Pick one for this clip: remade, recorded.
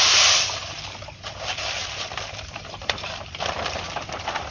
remade